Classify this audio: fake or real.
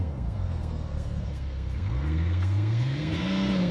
fake